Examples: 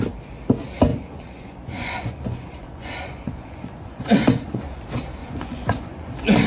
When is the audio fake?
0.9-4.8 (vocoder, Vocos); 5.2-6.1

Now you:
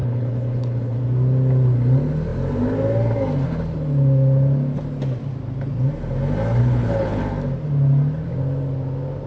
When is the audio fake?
0.0-1.0 (codec, HILCodec); 6.6-7.2

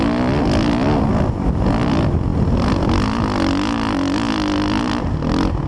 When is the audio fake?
none

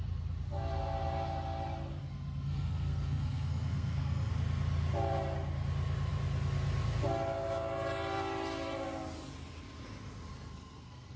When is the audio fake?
2.0-4.3 (codec, SNAC); 10.3-11.2

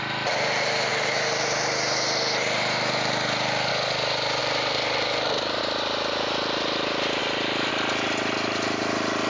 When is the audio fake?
0.9-3.7 (vocoder, BigVGAN v2); 4.4-5.6

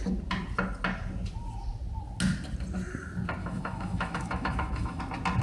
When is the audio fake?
3.4-5.0 (autoencoder, DAC-VAE)